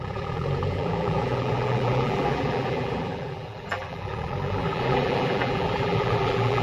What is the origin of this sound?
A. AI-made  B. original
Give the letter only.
A